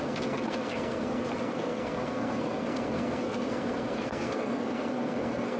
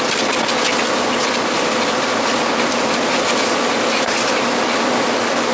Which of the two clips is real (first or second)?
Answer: second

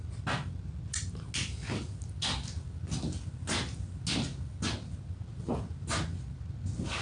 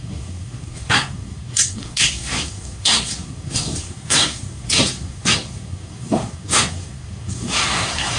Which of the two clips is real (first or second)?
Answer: first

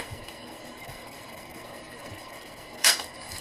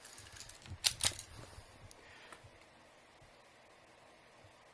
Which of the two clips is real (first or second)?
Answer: second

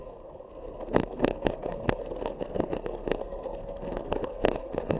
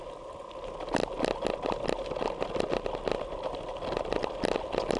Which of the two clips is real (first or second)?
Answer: second